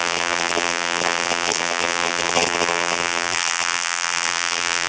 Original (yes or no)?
no